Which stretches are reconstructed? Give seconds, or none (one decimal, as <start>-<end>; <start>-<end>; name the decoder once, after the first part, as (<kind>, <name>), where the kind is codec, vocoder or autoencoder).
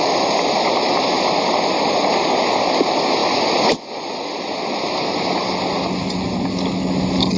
none